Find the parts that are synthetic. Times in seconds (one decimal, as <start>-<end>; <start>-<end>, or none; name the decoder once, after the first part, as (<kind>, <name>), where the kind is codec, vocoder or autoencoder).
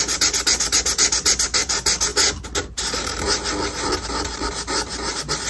none